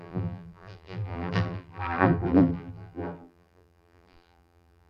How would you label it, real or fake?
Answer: fake